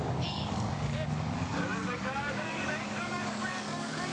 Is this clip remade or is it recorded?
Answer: remade